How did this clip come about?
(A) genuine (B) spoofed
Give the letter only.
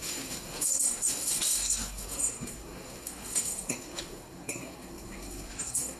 B